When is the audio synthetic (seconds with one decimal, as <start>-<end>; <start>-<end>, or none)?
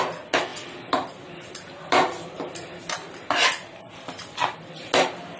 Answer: none